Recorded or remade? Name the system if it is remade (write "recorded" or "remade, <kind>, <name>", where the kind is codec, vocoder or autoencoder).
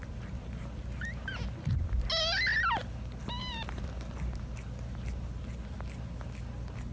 recorded